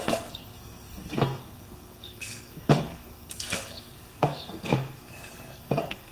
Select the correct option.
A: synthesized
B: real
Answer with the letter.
A